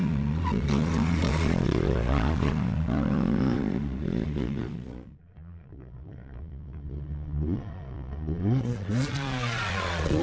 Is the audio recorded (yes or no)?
no